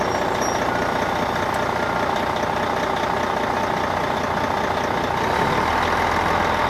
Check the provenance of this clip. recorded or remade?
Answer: recorded